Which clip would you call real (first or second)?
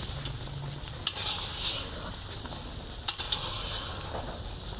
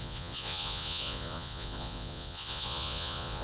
first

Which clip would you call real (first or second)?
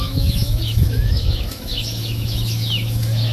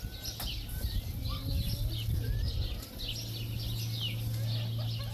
second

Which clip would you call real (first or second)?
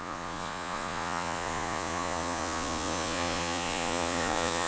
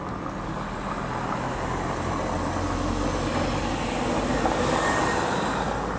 second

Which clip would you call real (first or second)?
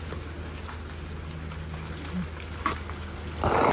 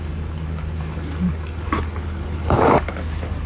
first